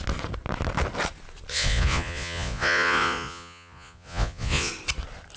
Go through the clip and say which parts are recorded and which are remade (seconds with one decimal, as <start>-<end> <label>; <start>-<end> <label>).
0.0-1.5 recorded; 1.5-4.7 remade; 4.7-5.4 recorded

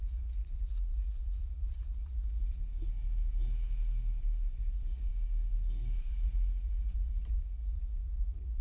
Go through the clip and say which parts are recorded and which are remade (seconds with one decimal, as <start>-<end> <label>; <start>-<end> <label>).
0.0-2.6 remade; 2.6-4.6 recorded; 4.6-5.1 remade; 5.1-6.0 recorded; 6.0-8.6 remade

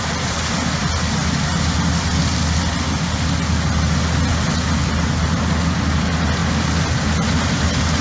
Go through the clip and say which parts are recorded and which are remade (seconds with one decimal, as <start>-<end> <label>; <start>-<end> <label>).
0.0-8.0 recorded

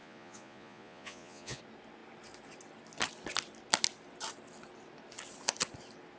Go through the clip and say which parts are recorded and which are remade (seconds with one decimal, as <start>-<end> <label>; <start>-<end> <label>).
0.0-1.6 remade; 1.6-6.2 recorded

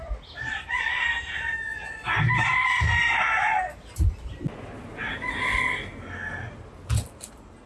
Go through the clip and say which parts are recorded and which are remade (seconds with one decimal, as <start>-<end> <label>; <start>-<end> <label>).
0.0-7.7 recorded

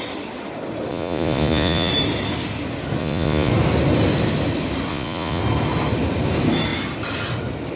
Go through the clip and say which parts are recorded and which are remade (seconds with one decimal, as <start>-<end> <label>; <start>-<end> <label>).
0.0-0.9 recorded; 0.9-1.9 remade; 1.9-3.0 recorded; 3.0-3.5 remade; 3.5-4.9 recorded; 4.9-5.4 remade; 5.4-7.8 recorded

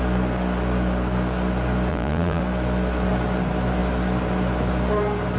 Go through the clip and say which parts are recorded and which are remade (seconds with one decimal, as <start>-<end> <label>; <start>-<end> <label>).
0.0-1.9 recorded; 1.9-2.4 remade; 2.4-5.4 recorded

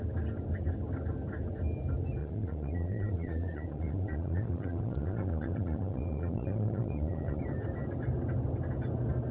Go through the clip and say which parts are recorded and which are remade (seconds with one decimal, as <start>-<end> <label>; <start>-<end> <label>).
0.0-2.2 recorded; 2.2-7.4 remade; 7.4-9.3 recorded